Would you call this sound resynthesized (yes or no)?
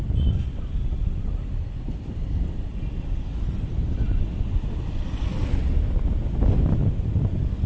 no